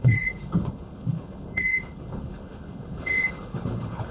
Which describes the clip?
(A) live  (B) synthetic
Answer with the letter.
B